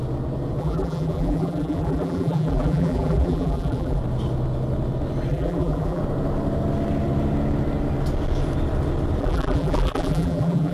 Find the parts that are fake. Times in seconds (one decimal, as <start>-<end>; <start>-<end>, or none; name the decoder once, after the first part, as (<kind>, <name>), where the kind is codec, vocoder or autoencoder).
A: 0.6-4.0 (vocoder, BigVGAN v2); 5.3-6.0; 9.2-10.7